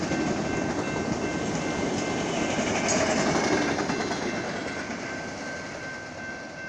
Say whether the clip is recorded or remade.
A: recorded